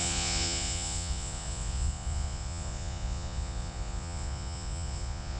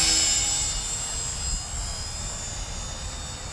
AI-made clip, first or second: first